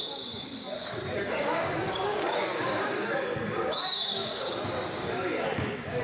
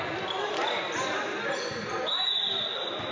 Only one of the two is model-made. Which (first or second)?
first